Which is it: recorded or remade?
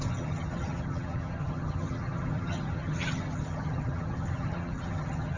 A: remade